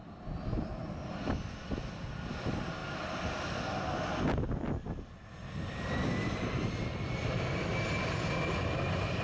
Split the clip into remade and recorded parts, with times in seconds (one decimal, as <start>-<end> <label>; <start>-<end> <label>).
0.0-9.2 recorded